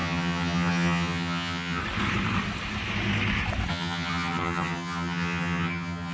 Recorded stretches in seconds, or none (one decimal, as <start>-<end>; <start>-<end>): 1.8-3.7